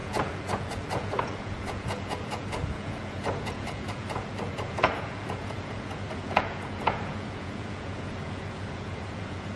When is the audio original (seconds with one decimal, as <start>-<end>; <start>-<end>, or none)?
none

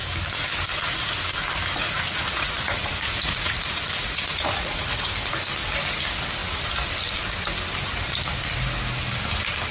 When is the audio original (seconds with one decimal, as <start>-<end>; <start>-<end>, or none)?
0.0-1.8; 5.1-9.7

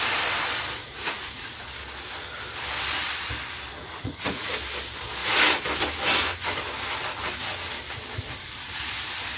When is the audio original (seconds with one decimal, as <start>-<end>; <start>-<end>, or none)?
0.0-0.8; 1.7-3.8; 4.5-9.4